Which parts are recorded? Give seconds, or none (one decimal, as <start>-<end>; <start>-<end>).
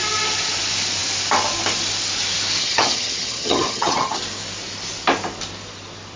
0.0-2.6; 4.2-6.2